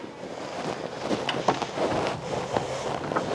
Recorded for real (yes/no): yes